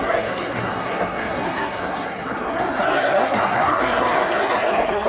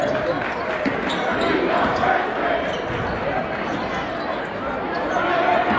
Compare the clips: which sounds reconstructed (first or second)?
first